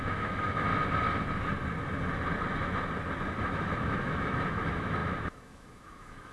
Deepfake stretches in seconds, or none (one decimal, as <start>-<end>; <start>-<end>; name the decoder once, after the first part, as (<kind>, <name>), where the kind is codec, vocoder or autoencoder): 0.0-0.7 (autoencoder, DAC-VAE); 3.4-6.3